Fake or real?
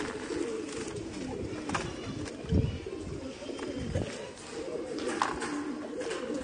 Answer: real